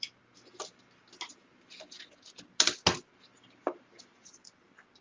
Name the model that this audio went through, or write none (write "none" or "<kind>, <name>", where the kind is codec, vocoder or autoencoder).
none